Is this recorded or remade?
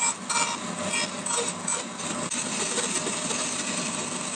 recorded